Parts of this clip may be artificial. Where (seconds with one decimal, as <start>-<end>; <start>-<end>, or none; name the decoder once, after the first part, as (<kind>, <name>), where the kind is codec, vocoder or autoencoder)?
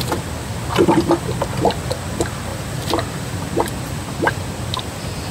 2.5-4.3 (vocoder, BigVGAN v2)